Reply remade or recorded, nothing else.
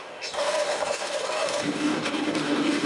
remade